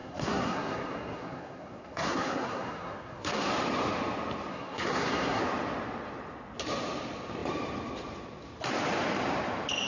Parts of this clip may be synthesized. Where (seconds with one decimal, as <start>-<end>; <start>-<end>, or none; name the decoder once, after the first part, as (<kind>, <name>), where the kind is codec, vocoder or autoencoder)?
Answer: 0.0-3.5 (codec, SNAC); 4.5-5.4